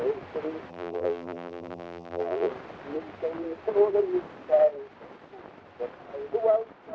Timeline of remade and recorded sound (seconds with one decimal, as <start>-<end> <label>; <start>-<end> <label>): 0.0-0.7 recorded; 0.7-2.5 remade; 2.5-6.9 recorded